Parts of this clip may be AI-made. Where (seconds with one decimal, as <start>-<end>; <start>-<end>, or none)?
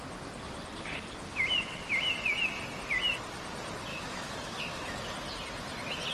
3.9-5.0